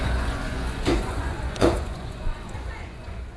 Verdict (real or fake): fake